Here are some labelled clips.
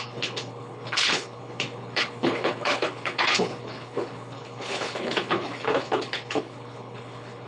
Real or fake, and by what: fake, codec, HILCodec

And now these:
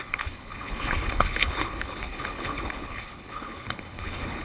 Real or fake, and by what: fake, codec, HILCodec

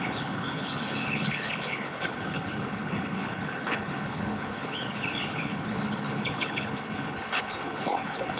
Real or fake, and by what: fake, codec, HILCodec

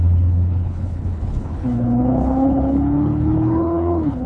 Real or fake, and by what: fake, codec, HILCodec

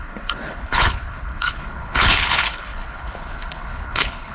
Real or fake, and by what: fake, codec, HILCodec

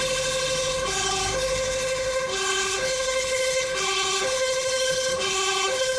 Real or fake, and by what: fake, codec, HILCodec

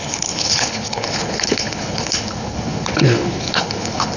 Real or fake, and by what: fake, codec, HILCodec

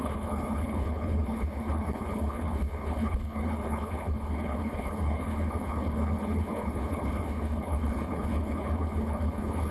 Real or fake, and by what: fake, codec, HILCodec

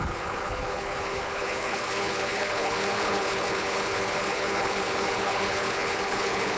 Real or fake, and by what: fake, codec, HILCodec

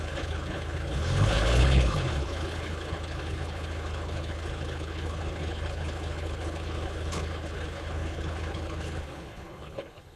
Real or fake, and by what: fake, codec, HILCodec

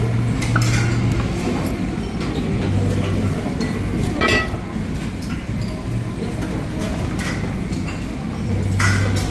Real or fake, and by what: real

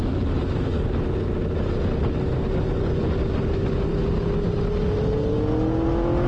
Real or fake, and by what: real